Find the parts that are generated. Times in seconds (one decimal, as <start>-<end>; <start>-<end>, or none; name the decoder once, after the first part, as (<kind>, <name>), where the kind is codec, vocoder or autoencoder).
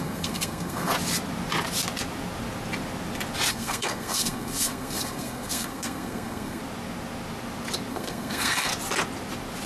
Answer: 0.0-0.9 (codec, SNAC); 3.5-6.6; 7.9-8.7